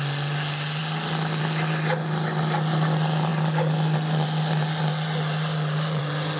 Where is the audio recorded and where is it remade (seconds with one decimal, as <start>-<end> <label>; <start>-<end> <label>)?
0.0-6.4 recorded